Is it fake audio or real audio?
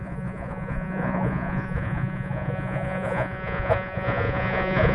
fake